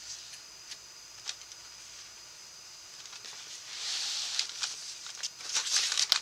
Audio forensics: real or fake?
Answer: fake